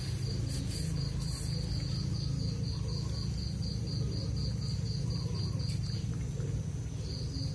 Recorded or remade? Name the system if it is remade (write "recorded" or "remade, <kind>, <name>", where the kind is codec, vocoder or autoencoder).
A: recorded